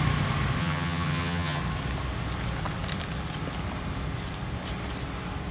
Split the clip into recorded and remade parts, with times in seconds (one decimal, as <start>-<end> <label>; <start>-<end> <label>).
0.0-0.6 recorded; 0.6-1.6 remade; 1.6-5.5 recorded